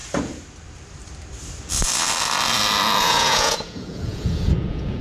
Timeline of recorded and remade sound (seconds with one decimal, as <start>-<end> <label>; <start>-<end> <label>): 0.0-3.0 recorded; 3.0-5.0 remade